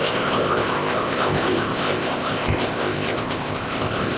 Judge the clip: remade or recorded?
remade